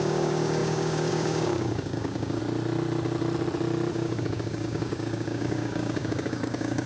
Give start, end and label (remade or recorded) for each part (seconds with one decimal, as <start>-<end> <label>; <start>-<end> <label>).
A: 0.0-2.4 remade; 2.4-3.9 recorded; 3.9-6.9 remade

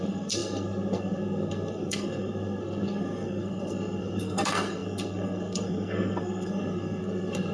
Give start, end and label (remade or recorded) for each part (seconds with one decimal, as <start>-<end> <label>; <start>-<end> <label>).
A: 0.0-7.5 remade